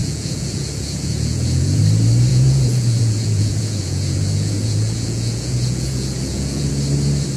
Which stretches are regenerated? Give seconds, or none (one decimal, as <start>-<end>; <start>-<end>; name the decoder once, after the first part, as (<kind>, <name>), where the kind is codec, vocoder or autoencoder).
0.0-1.8 (vocoder, Vocos); 2.3-6.7